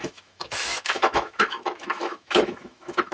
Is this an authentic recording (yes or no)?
no